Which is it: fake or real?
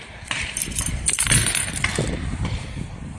real